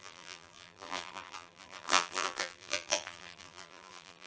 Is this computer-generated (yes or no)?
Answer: yes